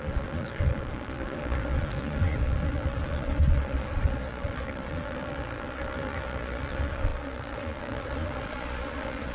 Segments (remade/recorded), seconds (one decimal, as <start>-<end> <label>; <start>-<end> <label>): 0.0-9.3 remade